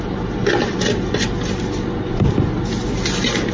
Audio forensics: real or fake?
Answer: real